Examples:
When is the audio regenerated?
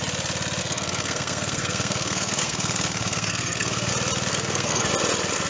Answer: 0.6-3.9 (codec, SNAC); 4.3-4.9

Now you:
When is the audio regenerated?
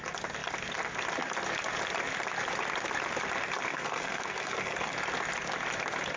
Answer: 3.7-4.9 (codec, SNAC)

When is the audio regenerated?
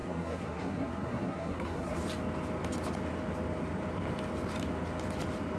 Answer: 0.0-2.0 (codec, SNAC)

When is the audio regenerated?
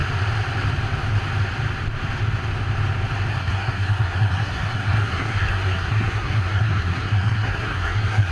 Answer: 3.3-8.3 (codec, SNAC)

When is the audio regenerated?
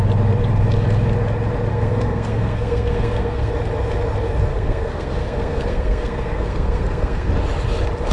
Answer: 1.7-3.5 (codec, SNAC); 4.5-7.3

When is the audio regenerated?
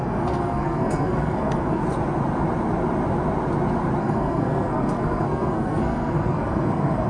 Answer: 0.0-1.8 (codec, SNAC); 4.0-7.1